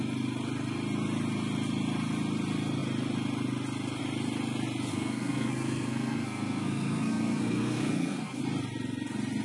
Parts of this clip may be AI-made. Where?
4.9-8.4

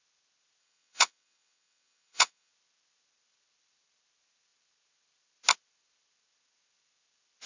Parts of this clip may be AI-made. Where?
0.6-2.5

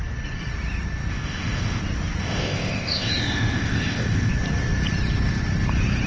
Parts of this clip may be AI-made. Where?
1.1-1.8; 2.2-4.3